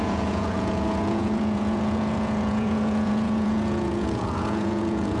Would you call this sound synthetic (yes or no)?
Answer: yes